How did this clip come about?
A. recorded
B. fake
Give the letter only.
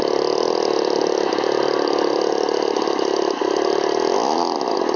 A